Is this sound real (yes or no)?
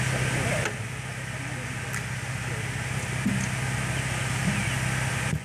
yes